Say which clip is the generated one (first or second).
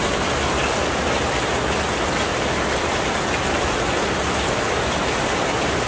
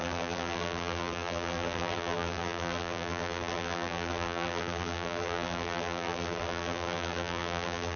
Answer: second